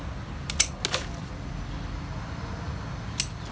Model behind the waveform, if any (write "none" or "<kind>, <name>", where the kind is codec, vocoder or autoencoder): none